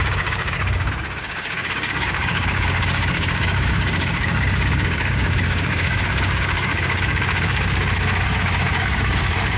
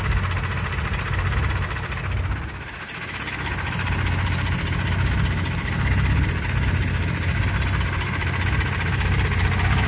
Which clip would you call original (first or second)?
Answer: second